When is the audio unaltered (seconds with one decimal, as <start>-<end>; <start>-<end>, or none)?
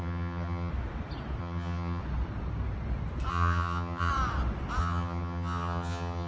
0.7-1.4; 2.0-3.3; 4.1-4.8